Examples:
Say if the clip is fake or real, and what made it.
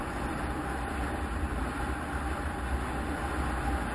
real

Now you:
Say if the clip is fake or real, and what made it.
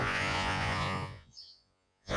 fake, vocoder, Vocos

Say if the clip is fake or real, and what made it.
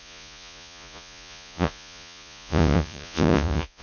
fake, vocoder, Vocos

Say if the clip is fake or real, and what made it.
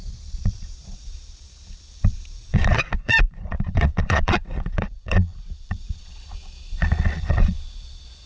fake, vocoder, Vocos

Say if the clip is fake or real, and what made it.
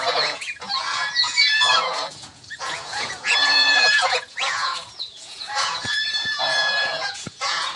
fake, vocoder, Vocos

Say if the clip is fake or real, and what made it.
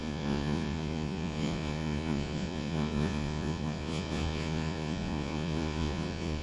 fake, vocoder, Vocos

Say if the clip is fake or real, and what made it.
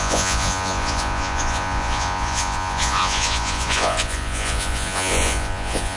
fake, vocoder, Vocos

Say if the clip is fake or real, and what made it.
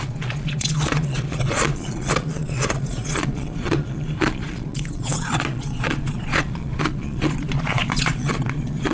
fake, vocoder, Vocos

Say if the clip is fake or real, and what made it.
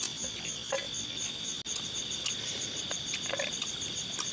real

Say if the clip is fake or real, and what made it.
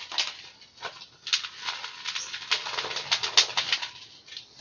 real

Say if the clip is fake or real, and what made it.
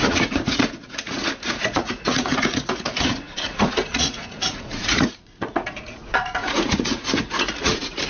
fake, vocoder, Vocos